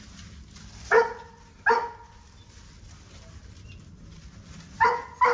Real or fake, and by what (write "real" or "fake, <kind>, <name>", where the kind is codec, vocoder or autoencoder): real